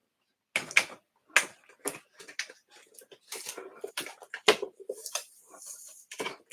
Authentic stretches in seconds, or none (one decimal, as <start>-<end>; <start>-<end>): 0.0-3.9